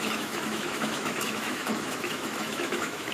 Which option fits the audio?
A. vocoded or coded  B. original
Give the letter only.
A